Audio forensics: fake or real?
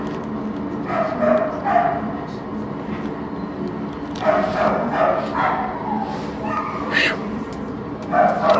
real